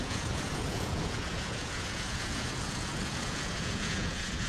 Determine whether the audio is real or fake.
fake